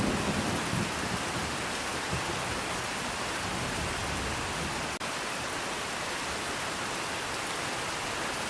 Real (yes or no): yes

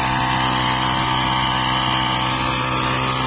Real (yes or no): yes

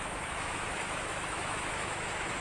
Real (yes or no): no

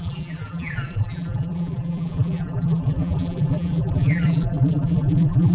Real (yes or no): no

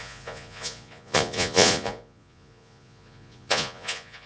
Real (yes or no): no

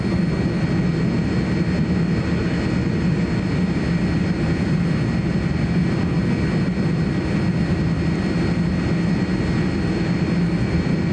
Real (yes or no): yes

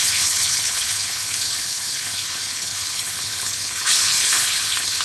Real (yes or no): no